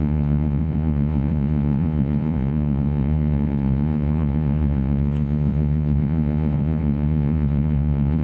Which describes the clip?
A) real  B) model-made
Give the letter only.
B